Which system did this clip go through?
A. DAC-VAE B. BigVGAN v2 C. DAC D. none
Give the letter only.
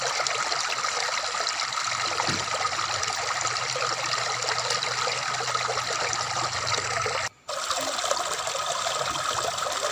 D